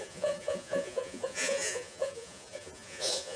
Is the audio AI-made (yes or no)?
yes